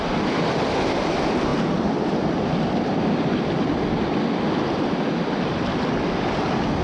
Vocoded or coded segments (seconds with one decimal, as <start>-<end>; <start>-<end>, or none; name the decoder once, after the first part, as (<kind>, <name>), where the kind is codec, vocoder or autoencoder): none